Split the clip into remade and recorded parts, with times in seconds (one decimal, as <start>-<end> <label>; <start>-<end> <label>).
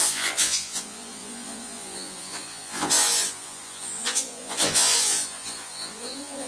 0.0-6.5 remade